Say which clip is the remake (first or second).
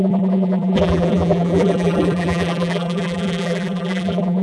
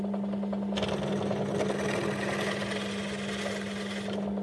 first